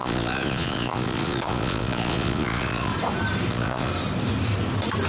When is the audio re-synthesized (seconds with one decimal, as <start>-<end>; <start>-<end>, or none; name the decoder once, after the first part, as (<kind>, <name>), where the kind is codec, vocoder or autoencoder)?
0.0-2.9 (vocoder, Vocos); 3.5-3.9